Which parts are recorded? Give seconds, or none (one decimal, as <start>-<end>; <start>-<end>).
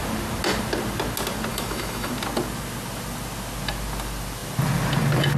0.0-1.5; 2.1-5.4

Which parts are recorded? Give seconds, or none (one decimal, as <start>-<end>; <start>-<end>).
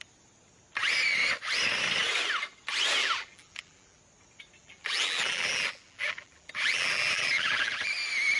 0.0-3.0; 4.0-4.6; 7.9-8.4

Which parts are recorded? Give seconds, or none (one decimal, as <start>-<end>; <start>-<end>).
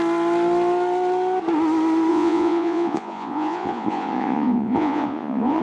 0.0-2.1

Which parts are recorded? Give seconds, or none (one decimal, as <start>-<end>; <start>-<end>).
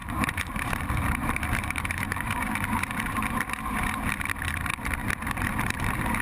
3.4-5.0